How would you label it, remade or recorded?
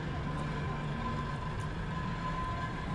recorded